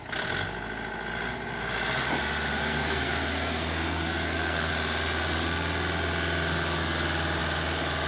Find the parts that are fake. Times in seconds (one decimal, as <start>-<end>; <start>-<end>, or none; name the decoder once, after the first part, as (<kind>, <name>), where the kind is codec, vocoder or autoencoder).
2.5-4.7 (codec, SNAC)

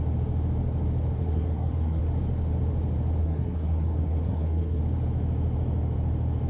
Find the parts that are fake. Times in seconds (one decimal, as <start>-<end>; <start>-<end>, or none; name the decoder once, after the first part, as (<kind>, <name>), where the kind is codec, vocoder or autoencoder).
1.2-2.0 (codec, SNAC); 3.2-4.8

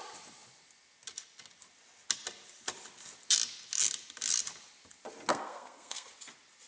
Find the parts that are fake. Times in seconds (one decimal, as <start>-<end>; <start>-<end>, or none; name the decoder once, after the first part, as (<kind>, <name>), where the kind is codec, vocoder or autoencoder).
5.3-6.1 (codec, SNAC)

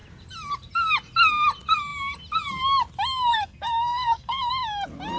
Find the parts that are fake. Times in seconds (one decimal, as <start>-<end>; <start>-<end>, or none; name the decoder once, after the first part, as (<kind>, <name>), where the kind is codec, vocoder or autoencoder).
3.3-4.5 (codec, SNAC)

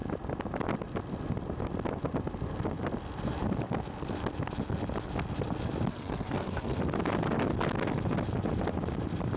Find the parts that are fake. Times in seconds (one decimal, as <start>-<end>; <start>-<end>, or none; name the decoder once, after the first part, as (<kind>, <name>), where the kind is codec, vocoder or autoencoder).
5.9-6.8 (codec, SNAC)

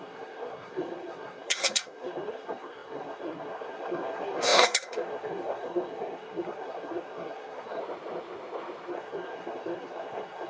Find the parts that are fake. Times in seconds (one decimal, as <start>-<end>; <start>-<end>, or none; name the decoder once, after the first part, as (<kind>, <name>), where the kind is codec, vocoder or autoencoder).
0.0-7.8 (codec, SNAC); 8.9-10.5

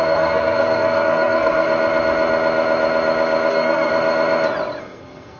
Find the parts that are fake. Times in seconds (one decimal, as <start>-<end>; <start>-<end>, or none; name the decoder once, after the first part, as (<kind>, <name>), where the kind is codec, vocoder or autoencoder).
0.0-1.7 (codec, SNAC); 3.5-3.9; 4.8-5.4

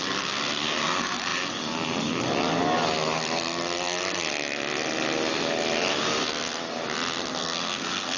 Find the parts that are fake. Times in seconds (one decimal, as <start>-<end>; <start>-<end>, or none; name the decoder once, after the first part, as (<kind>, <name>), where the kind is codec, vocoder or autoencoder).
7.4-8.2 (codec, SNAC)